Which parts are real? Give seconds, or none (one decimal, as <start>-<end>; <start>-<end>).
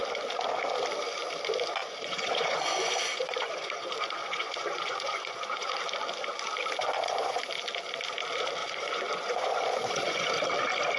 0.0-1.8; 5.7-6.8; 7.4-8.6; 10.3-11.0